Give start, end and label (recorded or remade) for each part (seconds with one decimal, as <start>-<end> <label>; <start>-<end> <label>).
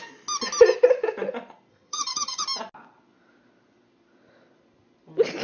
0.0-1.7 recorded; 1.7-2.4 remade; 2.4-5.4 recorded